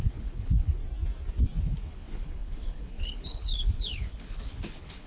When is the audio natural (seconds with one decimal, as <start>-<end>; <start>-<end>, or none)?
0.8-1.6